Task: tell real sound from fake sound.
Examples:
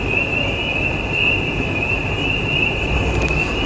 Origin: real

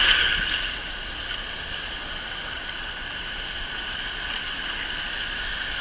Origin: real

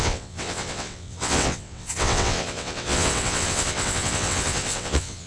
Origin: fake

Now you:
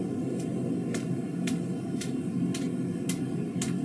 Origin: real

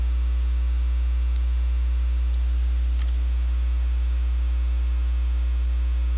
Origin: real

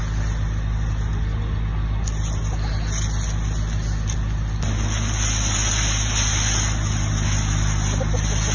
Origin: real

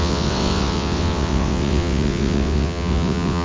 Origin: fake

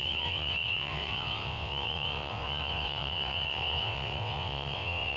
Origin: fake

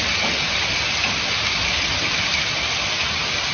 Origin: real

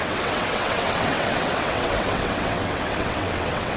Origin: fake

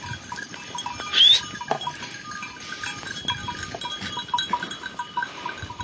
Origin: real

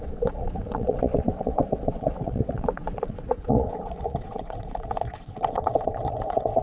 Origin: fake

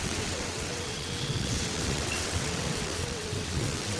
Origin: fake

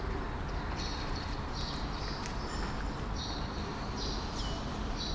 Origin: real